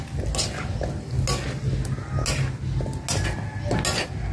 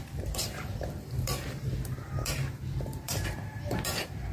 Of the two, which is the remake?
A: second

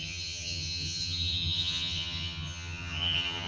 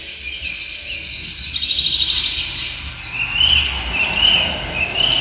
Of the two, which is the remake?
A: first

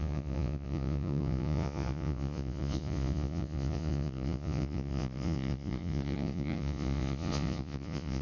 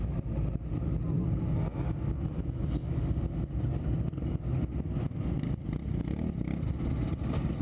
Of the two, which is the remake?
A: first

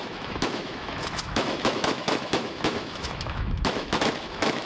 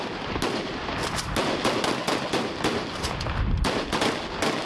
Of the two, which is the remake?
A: first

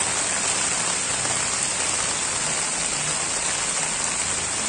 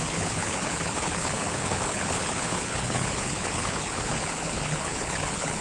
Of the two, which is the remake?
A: second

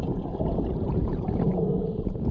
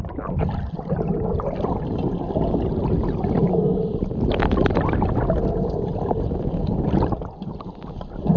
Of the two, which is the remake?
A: first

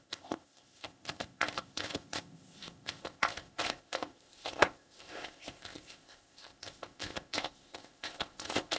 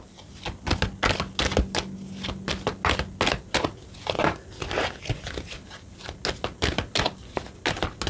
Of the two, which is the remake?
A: first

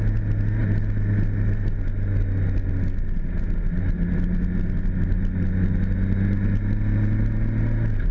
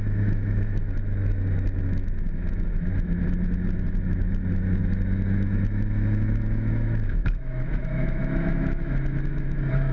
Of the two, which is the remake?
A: second